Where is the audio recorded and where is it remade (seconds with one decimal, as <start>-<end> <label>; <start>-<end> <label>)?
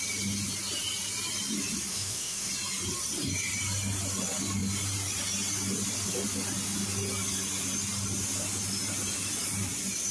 0.0-1.9 recorded; 1.9-2.5 remade; 2.5-10.1 recorded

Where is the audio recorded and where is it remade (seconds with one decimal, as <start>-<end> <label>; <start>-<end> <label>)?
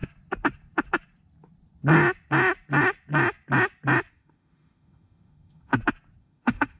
0.0-4.1 recorded; 4.1-5.7 remade; 5.7-6.2 recorded; 6.2-6.8 remade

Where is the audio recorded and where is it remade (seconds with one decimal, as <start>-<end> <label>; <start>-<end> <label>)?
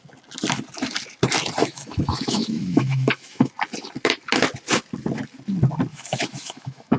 0.0-1.6 recorded; 1.6-3.5 remade; 3.5-5.9 recorded; 5.9-7.0 remade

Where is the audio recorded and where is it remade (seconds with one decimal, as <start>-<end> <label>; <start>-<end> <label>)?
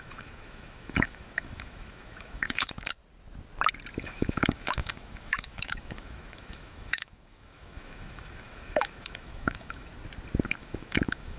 0.0-3.0 remade; 3.0-3.9 recorded; 3.9-9.9 remade; 9.9-10.5 recorded; 10.5-11.4 remade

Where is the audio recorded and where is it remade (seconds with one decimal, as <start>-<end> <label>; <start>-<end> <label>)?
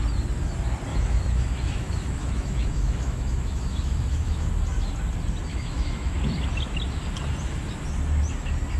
0.0-0.9 recorded; 0.9-4.5 remade; 4.5-5.5 recorded; 5.5-6.1 remade; 6.1-8.8 recorded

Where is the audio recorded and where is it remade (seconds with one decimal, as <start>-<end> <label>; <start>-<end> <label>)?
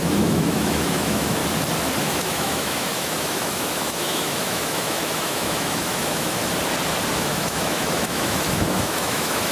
0.0-1.4 remade; 1.4-2.0 recorded; 2.0-6.4 remade; 6.4-7.1 recorded; 7.1-9.5 remade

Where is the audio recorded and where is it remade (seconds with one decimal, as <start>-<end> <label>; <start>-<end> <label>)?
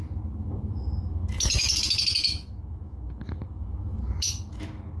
0.0-5.0 remade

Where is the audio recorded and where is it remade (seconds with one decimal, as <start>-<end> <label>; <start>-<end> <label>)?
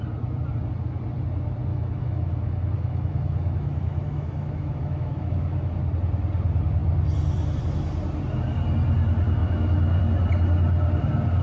0.0-1.7 recorded; 1.7-5.8 remade; 5.8-9.4 recorded; 9.4-10.0 remade; 10.0-11.4 recorded